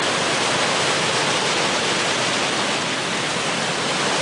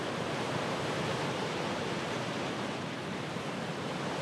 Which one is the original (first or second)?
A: first